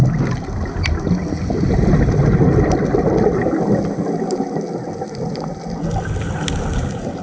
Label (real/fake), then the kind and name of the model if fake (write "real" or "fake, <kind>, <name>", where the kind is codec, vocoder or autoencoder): real